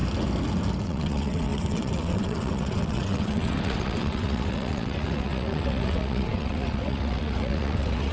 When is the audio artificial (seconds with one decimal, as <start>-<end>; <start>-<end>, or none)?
0.8-8.1

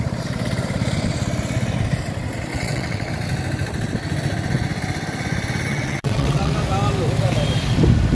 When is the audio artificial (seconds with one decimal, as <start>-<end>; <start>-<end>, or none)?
2.5-3.1; 5.7-6.5

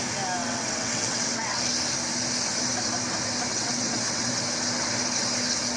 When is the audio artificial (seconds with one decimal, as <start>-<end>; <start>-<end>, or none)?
0.4-1.6; 3.5-4.3

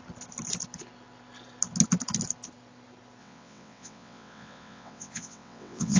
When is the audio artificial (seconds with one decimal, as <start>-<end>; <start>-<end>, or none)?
3.2-6.0

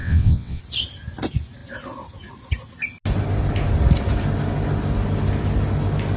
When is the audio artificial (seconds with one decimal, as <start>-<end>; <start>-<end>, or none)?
0.0-0.6

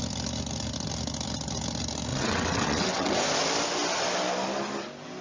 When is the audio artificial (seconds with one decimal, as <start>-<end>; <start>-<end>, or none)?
2.1-3.1

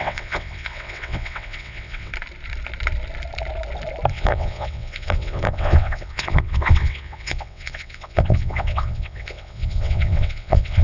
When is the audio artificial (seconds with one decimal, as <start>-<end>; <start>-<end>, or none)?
0.0-2.1; 4.1-10.8